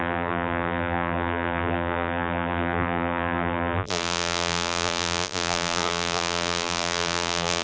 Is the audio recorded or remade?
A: remade